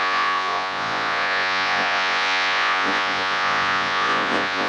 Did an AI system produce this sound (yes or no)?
yes